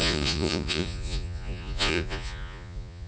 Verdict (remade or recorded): remade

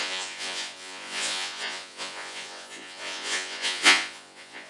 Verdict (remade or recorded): remade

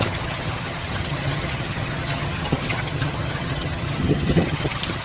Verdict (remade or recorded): remade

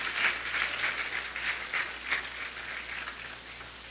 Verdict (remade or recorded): recorded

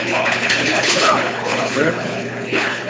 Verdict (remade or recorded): remade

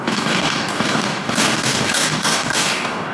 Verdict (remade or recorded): remade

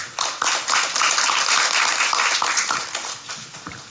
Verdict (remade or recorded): recorded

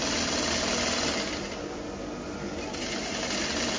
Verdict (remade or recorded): recorded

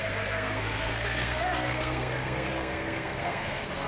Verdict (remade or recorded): remade